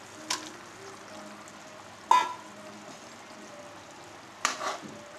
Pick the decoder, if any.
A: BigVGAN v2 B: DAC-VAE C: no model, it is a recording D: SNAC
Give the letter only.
C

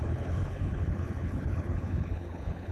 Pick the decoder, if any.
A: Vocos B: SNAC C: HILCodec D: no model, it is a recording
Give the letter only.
C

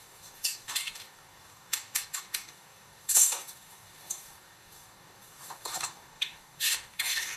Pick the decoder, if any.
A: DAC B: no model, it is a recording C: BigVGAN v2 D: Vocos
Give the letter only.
A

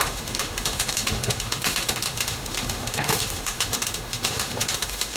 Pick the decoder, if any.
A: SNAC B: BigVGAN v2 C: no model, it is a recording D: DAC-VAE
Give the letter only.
D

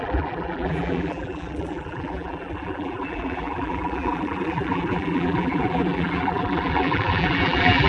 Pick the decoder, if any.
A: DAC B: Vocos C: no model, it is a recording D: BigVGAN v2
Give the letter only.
D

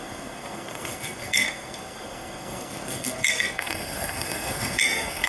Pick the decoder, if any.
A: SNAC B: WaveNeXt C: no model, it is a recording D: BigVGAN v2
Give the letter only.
A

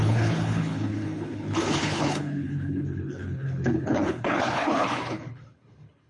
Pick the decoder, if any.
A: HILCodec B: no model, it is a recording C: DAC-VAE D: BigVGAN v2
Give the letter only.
A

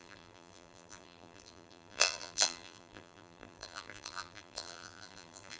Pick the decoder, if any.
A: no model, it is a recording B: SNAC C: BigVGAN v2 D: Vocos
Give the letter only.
C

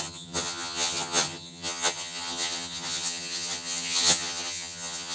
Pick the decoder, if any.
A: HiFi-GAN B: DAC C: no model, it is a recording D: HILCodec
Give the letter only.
A